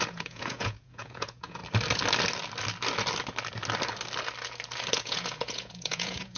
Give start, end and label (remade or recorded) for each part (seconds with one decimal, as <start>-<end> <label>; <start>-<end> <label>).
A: 0.0-1.6 remade; 1.6-4.9 recorded; 4.9-6.4 remade